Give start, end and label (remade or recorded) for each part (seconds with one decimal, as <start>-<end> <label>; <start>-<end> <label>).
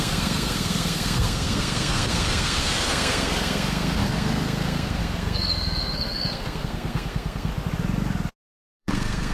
0.0-7.5 remade; 7.5-8.8 recorded; 8.8-9.3 remade